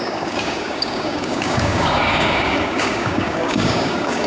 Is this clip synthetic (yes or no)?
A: yes